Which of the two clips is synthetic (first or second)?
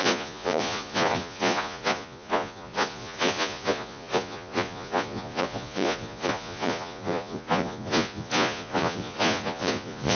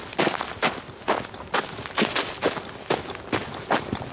first